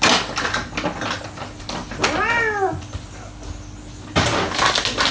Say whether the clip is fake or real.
real